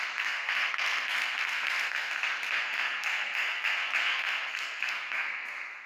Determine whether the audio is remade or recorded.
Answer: remade